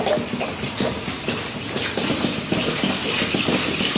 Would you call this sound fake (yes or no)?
no